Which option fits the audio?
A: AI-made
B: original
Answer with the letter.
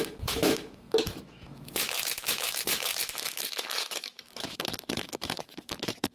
A